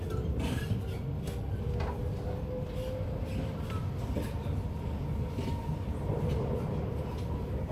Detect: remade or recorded recorded